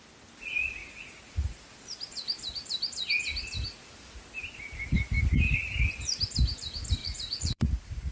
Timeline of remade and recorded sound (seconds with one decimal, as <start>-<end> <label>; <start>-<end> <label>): 0.0-0.8 recorded; 0.8-1.8 remade; 1.8-7.0 recorded; 7.0-8.1 remade